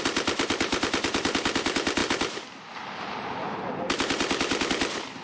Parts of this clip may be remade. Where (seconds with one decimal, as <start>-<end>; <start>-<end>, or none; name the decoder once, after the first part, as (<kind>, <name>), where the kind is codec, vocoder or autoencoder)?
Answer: none

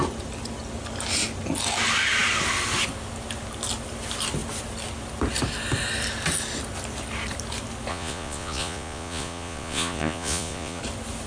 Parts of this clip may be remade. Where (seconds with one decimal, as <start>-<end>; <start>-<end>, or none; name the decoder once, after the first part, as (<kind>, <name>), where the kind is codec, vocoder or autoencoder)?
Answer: 7.9-10.8 (vocoder, Vocos)

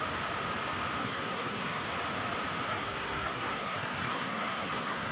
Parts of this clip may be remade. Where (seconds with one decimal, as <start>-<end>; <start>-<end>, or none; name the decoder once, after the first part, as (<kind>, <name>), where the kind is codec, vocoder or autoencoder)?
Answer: 1.0-1.8 (codec, SNAC); 2.7-5.1